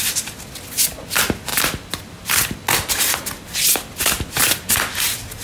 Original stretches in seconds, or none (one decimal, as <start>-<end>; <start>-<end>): 0.0-5.4